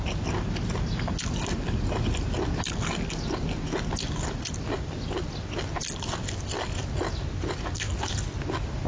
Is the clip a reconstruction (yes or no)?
no